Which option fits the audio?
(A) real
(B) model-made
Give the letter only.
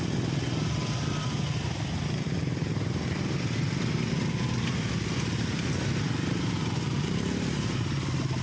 A